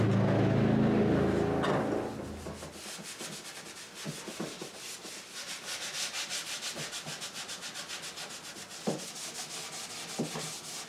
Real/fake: real